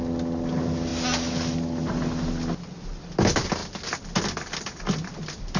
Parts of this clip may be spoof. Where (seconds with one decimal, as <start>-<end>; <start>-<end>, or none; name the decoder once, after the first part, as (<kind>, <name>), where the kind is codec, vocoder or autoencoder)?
none